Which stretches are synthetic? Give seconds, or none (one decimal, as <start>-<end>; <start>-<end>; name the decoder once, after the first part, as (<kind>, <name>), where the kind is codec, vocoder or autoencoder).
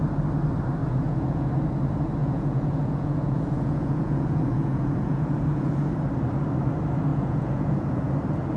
0.8-1.5 (vocoder, Vocos); 2.2-5.9; 7.1-8.1